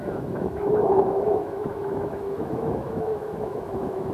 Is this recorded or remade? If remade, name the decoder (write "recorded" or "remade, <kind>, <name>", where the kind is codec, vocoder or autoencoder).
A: remade, autoencoder, DAC-VAE